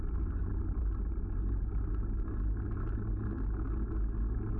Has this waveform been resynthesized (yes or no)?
no